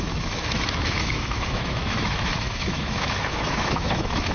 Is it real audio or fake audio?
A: fake